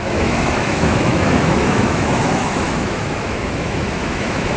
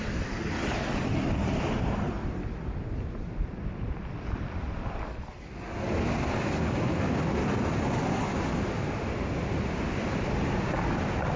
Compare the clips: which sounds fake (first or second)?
first